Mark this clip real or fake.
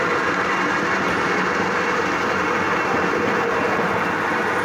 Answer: real